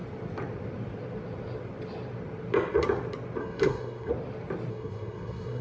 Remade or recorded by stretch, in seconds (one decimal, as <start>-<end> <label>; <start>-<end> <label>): 0.0-3.4 recorded; 3.4-4.1 remade; 4.1-4.7 recorded; 4.7-5.6 remade